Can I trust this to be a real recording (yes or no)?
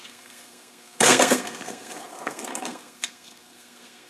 no